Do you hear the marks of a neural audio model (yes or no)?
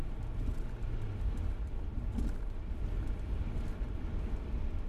no